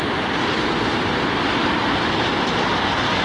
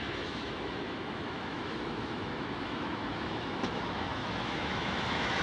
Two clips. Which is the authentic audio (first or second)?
first